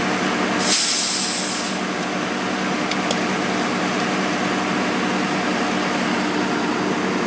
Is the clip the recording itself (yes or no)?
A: yes